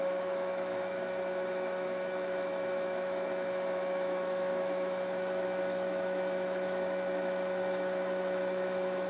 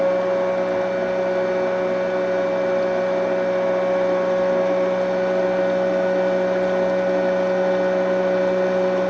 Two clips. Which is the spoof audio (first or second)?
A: first